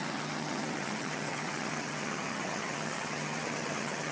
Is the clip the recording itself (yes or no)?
no